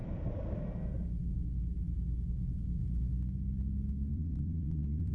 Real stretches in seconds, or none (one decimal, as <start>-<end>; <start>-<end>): 0.0-4.1